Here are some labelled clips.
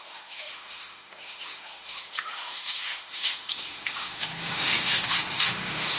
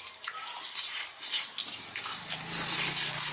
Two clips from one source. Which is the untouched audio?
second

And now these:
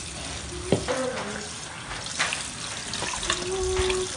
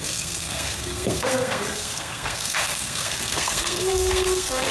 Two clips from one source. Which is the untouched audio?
first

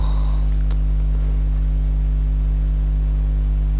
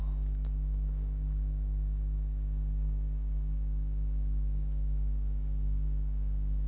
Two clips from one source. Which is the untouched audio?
first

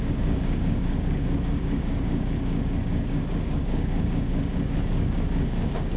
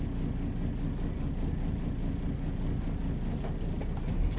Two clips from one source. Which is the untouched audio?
second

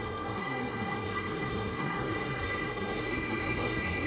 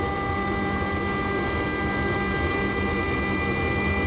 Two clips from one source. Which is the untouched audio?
second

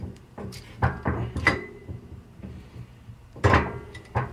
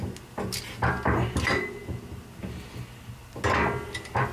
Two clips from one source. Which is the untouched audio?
second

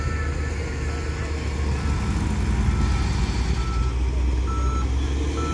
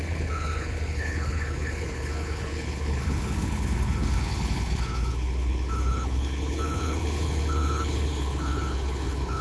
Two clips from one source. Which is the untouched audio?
first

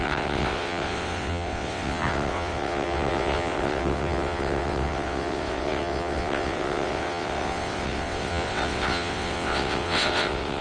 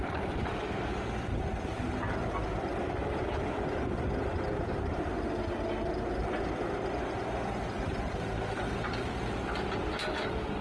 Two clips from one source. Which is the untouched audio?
second